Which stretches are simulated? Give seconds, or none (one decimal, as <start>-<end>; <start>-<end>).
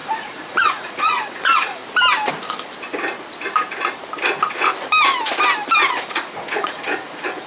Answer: 0.0-1.8; 5.9-7.5